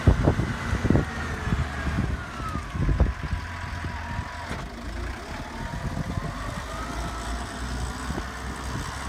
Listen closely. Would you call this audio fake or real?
real